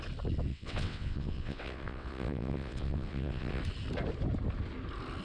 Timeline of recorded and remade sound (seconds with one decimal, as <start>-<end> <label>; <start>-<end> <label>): 0.0-0.5 recorded; 0.5-3.6 remade; 3.6-5.2 recorded